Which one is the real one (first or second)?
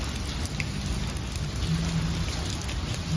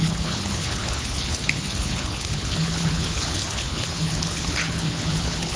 first